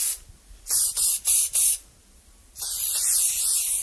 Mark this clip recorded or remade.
recorded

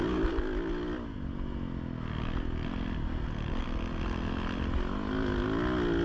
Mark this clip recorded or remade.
recorded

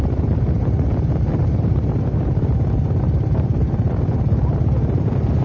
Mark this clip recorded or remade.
remade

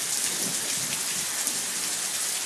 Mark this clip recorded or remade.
recorded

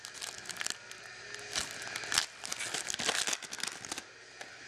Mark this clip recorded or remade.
recorded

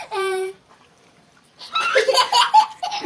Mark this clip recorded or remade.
remade